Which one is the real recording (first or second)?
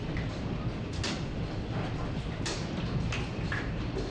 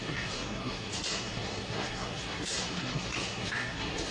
first